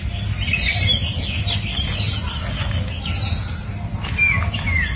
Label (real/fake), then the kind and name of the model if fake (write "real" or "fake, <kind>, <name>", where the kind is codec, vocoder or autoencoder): real